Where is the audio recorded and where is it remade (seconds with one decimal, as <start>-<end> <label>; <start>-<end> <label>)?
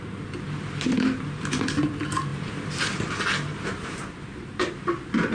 0.0-2.3 recorded; 2.3-2.9 remade; 2.9-3.5 recorded; 3.5-4.7 remade; 4.7-5.3 recorded